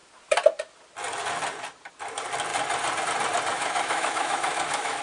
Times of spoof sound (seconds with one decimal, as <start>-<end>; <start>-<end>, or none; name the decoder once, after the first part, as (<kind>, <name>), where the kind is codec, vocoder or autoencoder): 3.5-5.0 (autoencoder, DAC-VAE)

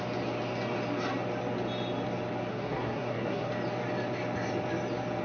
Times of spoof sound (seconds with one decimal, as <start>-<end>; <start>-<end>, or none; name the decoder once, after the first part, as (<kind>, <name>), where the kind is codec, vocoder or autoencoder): 2.5-3.5 (codec, SNAC)

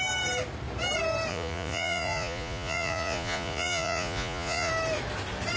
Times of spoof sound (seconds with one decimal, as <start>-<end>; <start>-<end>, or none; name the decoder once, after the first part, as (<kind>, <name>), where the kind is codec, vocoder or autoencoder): 1.3-4.7 (vocoder, Vocos)

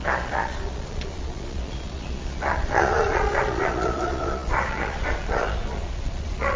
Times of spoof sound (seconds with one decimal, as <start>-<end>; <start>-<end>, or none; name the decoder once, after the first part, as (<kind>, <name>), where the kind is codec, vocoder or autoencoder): 0.0-6.6 (vocoder, Vocos)

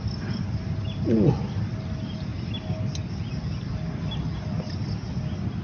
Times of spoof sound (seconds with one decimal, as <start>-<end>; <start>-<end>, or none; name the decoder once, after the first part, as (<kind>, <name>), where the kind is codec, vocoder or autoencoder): none

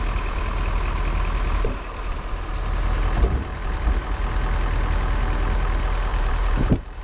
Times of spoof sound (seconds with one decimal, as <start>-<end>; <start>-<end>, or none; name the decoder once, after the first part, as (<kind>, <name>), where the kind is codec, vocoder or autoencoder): 6.1-7.0 (vocoder, BigVGAN v2)

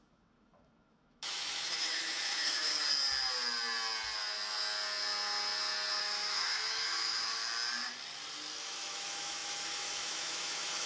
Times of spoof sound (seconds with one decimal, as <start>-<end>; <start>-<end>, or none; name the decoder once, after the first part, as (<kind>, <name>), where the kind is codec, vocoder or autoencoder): 0.0-2.7 (autoencoder, DAC-VAE); 6.0-7.4; 8.6-10.9

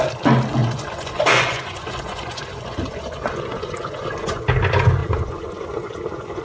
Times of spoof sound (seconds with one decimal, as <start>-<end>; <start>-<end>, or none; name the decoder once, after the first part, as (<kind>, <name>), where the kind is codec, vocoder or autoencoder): 0.6-4.4 (vocoder, Vocos); 5.0-6.4